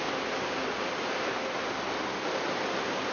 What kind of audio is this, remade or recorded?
recorded